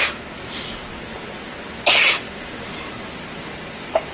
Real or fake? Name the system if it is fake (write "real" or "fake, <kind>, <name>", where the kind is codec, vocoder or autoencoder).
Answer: real